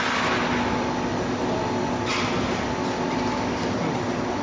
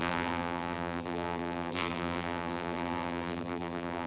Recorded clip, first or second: first